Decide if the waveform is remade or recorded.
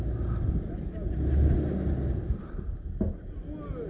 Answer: recorded